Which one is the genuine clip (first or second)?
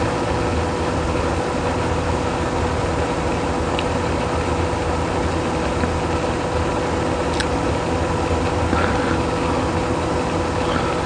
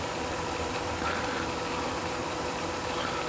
first